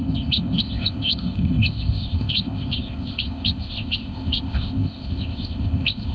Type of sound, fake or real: fake